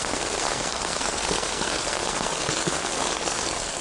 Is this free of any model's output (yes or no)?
no